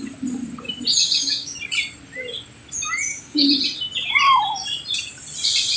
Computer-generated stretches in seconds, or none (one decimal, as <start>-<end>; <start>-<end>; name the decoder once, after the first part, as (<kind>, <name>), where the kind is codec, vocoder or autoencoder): 1.0-1.6 (codec, DAC); 3.1-3.6